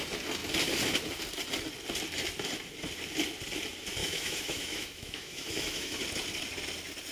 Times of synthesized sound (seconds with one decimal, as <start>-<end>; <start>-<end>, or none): 4.0-6.0